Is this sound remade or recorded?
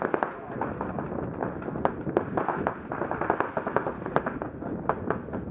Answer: recorded